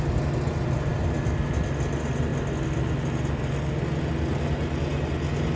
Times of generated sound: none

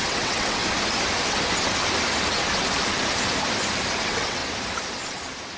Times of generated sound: 0.0-0.6 (vocoder, WaveNeXt); 4.0-4.4

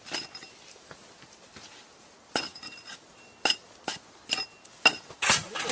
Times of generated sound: none

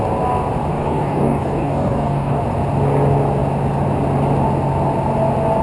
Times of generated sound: 0.7-2.4 (codec, DAC)

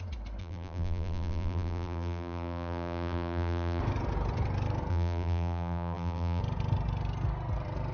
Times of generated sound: 0.4-3.8 (vocoder, BigVGAN v2); 4.9-6.4

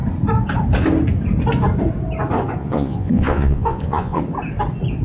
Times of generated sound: 2.6-4.2 (vocoder, Vocos)

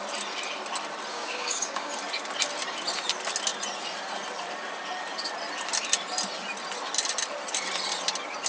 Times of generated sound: 1.1-1.9 (codec, DAC)

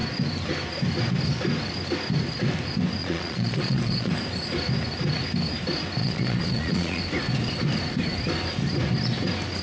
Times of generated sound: 3.0-4.1 (vocoder, Vocos); 6.0-7.0